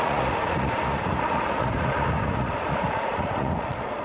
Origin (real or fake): fake